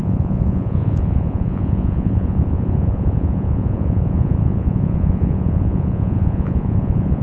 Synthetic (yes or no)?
yes